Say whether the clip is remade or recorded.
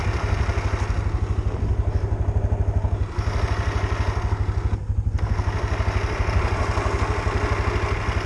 recorded